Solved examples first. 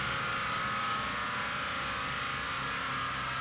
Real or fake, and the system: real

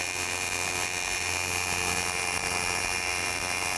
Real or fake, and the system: fake, vocoder, BigVGAN v2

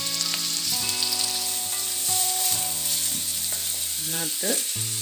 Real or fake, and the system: fake, vocoder, BigVGAN v2